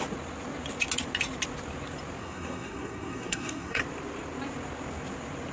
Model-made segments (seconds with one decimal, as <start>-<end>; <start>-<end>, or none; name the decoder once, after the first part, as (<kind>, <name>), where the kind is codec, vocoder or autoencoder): 2.2-3.8 (codec, SNAC)